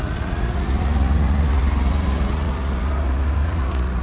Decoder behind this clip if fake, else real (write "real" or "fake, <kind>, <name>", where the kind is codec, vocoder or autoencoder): fake, vocoder, Vocos